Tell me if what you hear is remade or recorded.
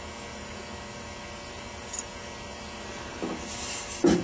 recorded